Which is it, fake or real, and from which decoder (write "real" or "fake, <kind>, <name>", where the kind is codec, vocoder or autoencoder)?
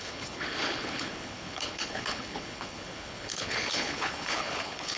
fake, codec, HILCodec